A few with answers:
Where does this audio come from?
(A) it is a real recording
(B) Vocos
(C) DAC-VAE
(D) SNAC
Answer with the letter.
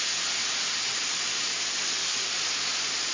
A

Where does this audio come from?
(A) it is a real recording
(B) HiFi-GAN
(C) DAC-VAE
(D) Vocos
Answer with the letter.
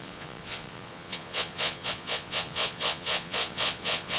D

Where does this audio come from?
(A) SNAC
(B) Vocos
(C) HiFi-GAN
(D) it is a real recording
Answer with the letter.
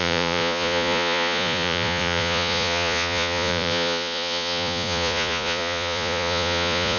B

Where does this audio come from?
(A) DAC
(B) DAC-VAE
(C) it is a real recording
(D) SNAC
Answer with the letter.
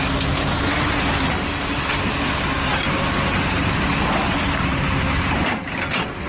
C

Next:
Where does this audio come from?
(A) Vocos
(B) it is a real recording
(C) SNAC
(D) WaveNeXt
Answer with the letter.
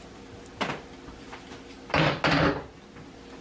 B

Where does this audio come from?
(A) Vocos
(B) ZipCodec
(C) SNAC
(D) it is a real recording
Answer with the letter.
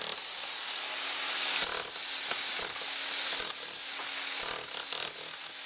D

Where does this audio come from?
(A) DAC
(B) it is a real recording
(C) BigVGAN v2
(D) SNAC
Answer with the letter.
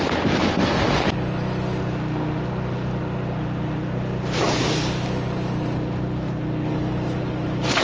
B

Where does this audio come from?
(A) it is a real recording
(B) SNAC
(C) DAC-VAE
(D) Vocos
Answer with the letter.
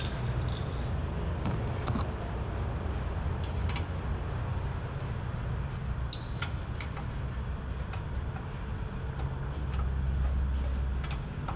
A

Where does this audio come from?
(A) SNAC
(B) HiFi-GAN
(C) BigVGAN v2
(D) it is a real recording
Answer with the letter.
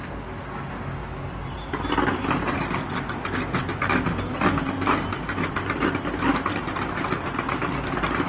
D